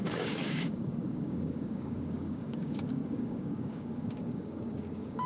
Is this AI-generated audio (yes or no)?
yes